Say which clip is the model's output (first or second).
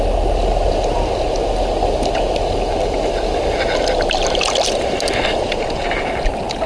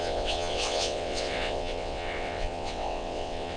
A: second